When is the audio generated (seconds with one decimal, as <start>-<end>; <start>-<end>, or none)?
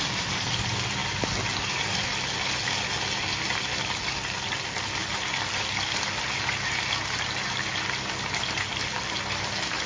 none